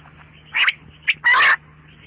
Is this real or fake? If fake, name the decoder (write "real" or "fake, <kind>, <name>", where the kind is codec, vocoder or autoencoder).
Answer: real